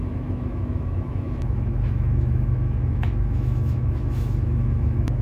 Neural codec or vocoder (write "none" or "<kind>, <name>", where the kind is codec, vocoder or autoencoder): autoencoder, DAC-VAE